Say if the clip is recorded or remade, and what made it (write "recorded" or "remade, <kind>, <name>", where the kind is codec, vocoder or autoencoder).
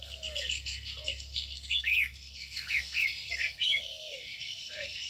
remade, codec, SNAC